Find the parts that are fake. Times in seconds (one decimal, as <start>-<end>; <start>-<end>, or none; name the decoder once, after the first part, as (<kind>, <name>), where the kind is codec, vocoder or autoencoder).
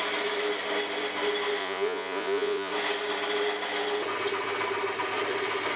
1.6-2.7 (vocoder, Vocos)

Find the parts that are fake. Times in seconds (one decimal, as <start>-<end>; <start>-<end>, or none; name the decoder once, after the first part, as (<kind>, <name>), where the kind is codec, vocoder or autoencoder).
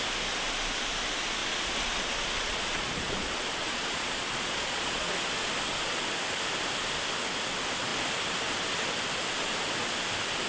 1.4-5.1 (vocoder, Vocos)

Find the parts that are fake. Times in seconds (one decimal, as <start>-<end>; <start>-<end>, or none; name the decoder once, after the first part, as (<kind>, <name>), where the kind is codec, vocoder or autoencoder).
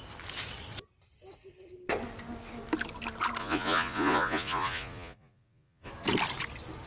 3.4-5.9 (vocoder, Vocos)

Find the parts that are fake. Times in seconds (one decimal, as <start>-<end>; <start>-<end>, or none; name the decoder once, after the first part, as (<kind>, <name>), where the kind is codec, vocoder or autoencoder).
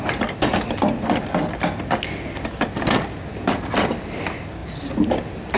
none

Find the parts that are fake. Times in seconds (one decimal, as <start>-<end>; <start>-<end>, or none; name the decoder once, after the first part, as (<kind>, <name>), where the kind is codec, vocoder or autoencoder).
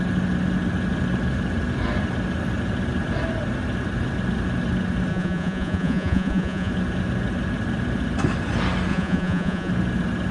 5.1-6.7 (vocoder, Vocos); 8.9-9.7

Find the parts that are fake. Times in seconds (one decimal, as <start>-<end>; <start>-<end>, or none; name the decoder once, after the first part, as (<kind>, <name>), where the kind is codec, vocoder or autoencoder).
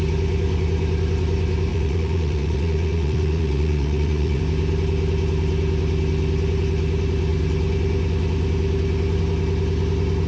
1.7-4.4 (vocoder, Vocos)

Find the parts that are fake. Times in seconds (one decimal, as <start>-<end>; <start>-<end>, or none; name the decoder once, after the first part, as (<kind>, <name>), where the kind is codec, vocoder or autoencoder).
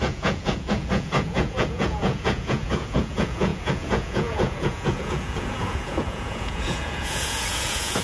0.0-8.0 (vocoder, Vocos)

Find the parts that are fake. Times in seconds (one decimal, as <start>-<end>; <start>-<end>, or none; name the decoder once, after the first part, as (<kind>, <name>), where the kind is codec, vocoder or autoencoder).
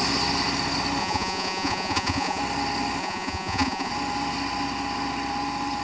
1.0-2.4 (vocoder, Vocos); 3.0-3.9